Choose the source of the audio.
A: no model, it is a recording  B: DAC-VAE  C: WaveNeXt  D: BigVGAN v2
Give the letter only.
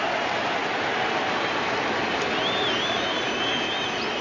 A